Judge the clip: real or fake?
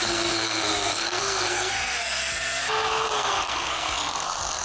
fake